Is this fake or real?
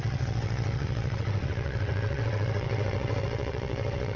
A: fake